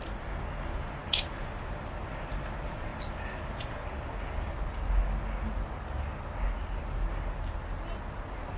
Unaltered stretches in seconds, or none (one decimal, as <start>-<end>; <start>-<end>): 0.0-8.6